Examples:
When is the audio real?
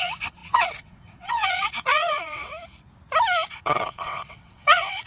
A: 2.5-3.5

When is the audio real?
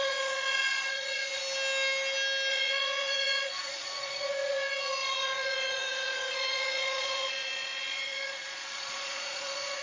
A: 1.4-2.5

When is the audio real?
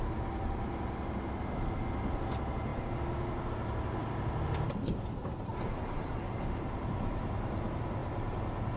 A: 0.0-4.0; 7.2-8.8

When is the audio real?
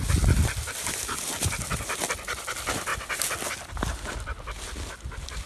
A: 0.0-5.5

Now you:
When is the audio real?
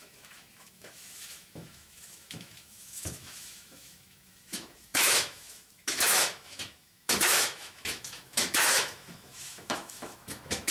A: none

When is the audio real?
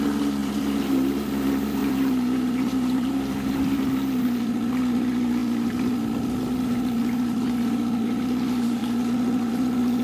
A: 0.0-1.8; 3.5-5.4; 7.0-10.0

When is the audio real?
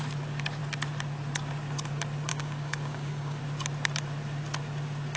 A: 0.0-2.3; 3.4-5.2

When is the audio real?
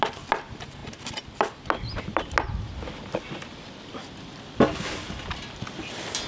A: 0.0-6.3